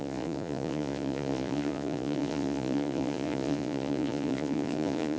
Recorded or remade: remade